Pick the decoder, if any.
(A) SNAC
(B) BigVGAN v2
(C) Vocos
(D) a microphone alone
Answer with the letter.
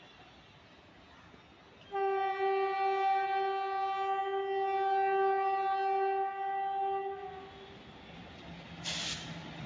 D